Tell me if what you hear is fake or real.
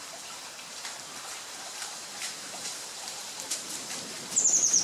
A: fake